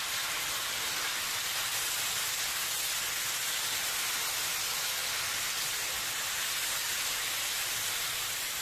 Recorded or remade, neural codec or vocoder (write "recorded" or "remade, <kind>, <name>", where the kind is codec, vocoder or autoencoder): recorded